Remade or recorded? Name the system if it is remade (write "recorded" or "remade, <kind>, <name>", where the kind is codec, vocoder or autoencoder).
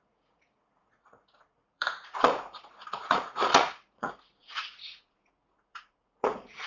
remade, vocoder, Vocos